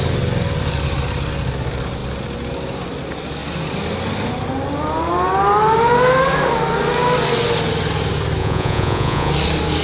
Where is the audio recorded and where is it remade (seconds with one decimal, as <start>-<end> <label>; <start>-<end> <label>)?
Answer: 0.0-8.4 recorded; 8.4-9.3 remade; 9.3-9.8 recorded